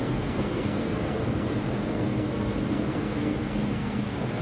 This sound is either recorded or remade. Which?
remade